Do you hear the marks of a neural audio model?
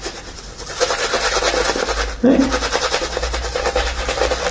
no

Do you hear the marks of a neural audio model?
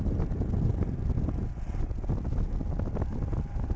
no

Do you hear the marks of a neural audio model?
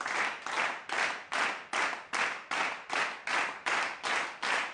no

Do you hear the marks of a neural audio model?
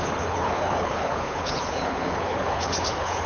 yes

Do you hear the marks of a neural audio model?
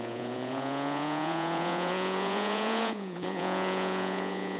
yes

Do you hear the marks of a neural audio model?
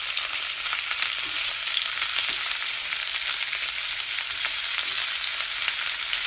no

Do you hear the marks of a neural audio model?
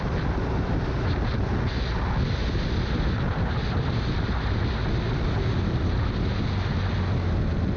no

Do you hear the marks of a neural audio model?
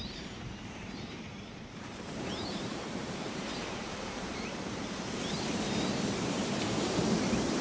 yes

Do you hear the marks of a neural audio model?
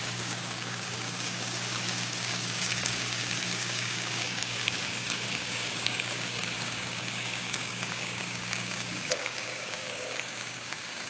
yes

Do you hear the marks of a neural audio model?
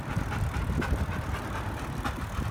no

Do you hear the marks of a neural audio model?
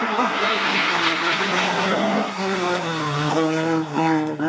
yes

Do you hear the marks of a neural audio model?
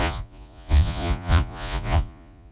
yes